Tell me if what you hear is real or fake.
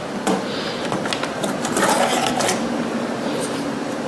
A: real